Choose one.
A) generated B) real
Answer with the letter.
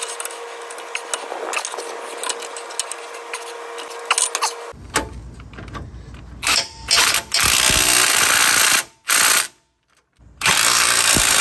B